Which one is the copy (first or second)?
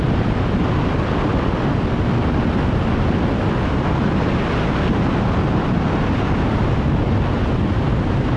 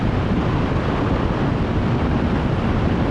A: second